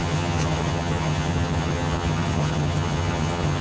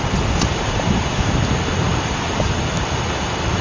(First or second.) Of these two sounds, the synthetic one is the first